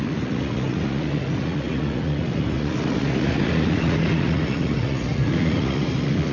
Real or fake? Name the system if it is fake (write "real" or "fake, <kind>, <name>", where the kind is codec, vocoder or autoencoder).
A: fake, vocoder, Vocos